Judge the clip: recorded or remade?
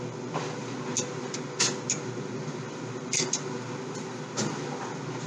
recorded